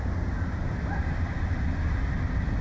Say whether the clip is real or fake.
fake